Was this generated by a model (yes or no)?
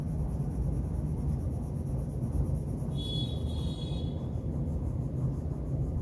no